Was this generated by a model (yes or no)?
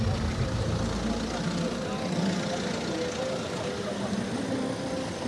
no